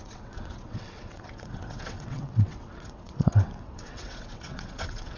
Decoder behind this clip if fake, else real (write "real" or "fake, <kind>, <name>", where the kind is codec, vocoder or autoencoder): fake, vocoder, WaveNeXt